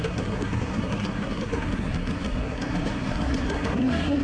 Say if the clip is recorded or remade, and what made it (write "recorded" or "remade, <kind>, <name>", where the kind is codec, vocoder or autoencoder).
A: remade, codec, SNAC